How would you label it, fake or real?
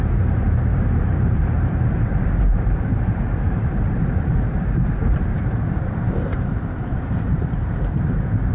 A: fake